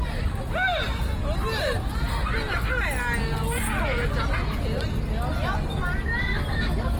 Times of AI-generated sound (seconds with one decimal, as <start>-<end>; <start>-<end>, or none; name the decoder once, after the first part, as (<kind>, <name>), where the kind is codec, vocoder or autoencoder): none